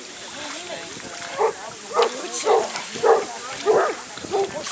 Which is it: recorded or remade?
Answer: recorded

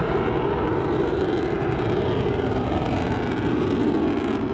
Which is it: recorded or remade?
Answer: recorded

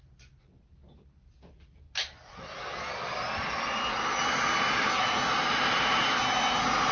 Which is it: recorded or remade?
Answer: recorded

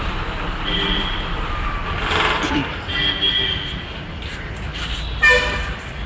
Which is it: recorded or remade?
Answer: recorded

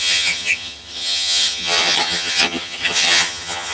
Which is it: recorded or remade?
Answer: remade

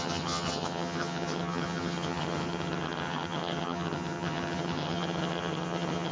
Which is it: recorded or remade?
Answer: remade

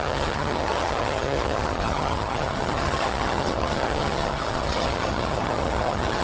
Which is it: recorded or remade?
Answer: remade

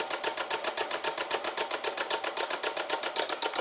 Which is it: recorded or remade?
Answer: recorded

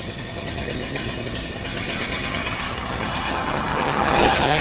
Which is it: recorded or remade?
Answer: remade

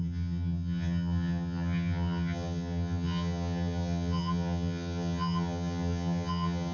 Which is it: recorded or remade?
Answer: remade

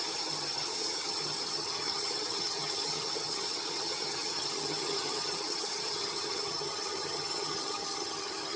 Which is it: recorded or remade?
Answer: remade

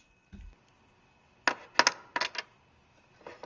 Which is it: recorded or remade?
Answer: recorded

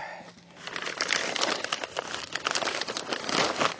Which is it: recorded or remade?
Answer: recorded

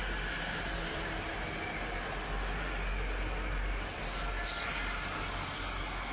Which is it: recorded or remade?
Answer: recorded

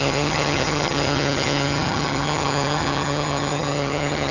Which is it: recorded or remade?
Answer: remade